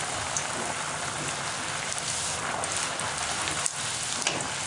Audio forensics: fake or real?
real